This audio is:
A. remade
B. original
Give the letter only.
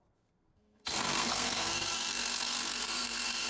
A